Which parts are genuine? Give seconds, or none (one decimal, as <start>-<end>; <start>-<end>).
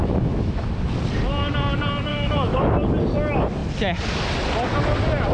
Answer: 0.7-2.1; 2.7-5.3